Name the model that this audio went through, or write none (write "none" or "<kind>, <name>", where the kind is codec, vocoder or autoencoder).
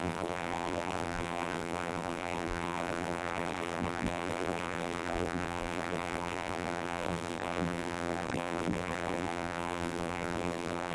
vocoder, BigVGAN v2